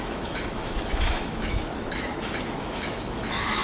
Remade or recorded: remade